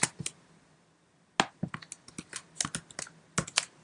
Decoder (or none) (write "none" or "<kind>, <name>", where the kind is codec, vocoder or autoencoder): none